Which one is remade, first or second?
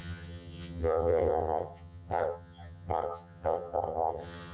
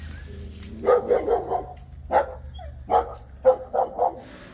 first